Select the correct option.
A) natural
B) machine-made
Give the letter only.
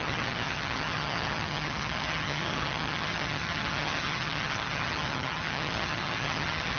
B